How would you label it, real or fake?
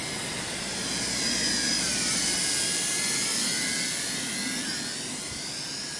real